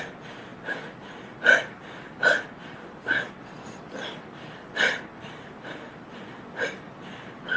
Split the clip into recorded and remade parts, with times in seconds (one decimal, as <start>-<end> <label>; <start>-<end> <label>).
0.0-7.6 recorded